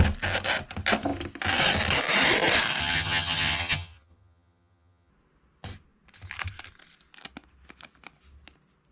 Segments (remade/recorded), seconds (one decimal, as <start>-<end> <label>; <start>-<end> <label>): 0.0-2.8 recorded; 2.8-5.1 remade; 5.1-8.9 recorded